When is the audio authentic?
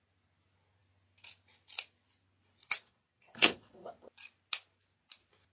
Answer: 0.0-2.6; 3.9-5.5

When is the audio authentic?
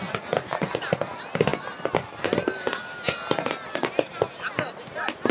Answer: 0.0-5.3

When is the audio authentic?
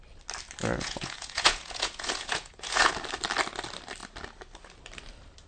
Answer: 0.0-0.6; 2.9-5.5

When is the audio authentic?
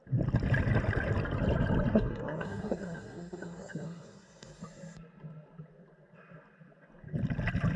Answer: 0.0-1.9; 4.6-7.8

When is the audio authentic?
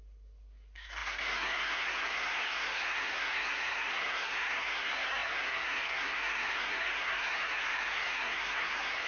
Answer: none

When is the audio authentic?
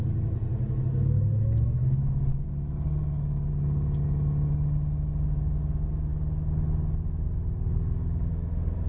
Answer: 0.0-8.9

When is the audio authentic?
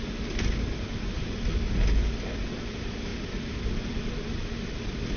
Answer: 0.0-5.2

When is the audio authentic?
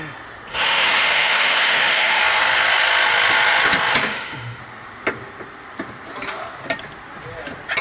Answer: 0.0-0.5; 2.2-4.1; 4.6-7.8